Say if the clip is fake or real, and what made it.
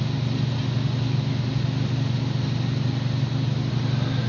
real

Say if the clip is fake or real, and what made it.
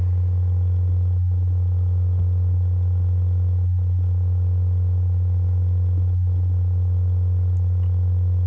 real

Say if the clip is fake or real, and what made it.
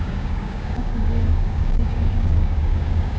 fake, codec, DAC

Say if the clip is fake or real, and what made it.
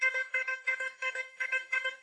fake, codec, DAC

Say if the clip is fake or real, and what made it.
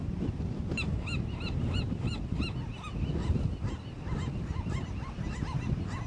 real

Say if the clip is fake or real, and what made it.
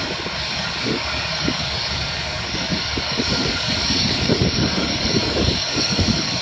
fake, codec, DAC